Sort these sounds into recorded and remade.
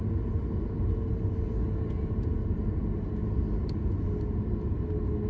recorded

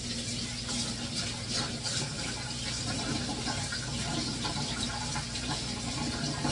recorded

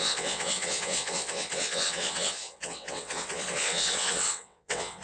remade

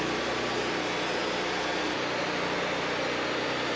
recorded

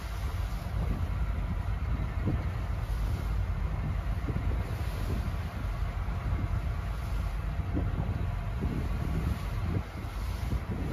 recorded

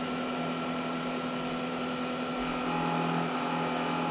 recorded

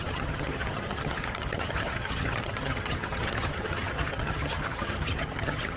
remade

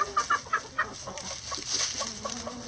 recorded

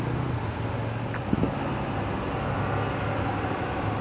recorded